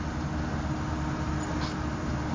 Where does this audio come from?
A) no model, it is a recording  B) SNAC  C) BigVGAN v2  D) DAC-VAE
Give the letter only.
A